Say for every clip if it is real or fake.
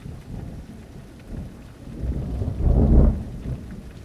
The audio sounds real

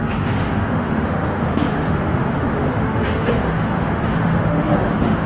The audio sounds fake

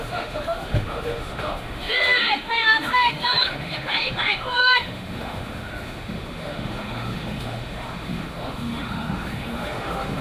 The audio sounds fake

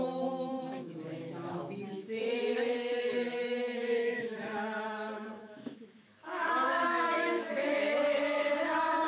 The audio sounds fake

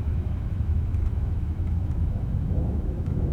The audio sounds fake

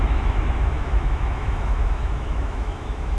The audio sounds fake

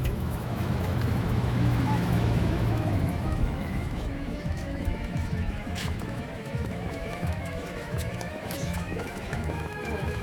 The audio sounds fake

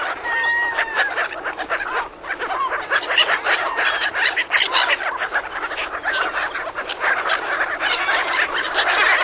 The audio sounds real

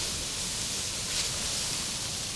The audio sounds real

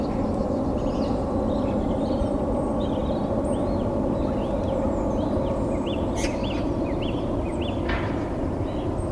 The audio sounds real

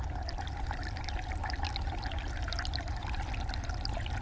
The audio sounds real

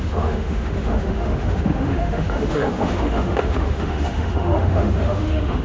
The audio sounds fake